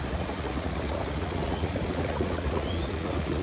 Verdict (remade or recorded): remade